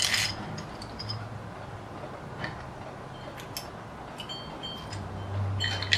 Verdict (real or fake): real